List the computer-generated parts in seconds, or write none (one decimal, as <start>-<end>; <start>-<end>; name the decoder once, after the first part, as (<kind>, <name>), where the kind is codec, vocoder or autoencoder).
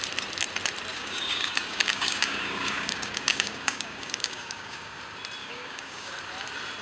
0.9-5.0 (codec, DAC); 5.4-6.1